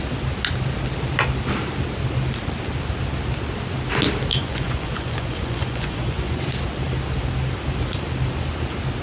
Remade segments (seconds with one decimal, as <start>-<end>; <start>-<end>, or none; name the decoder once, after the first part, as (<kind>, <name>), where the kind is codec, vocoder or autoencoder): 4.3-6.4 (vocoder, Vocos)